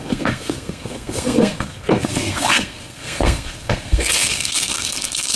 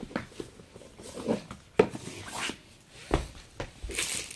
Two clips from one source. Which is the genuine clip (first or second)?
second